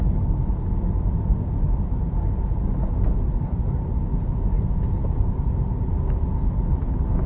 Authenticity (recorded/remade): recorded